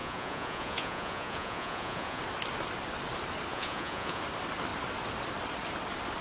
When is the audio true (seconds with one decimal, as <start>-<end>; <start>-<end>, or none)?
2.2-3.5; 4.2-6.2